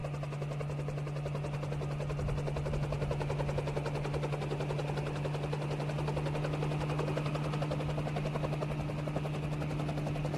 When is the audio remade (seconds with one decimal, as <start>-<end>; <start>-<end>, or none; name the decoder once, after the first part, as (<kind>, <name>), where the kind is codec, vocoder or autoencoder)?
none